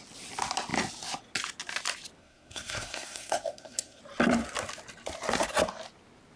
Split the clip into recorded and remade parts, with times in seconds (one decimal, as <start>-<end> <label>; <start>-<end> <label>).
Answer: 0.0-2.2 recorded; 2.2-4.0 remade; 4.0-6.4 recorded